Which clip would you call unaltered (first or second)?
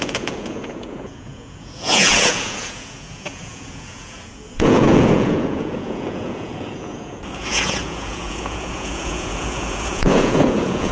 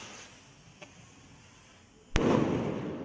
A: second